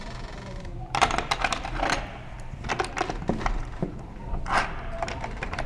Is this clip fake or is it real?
fake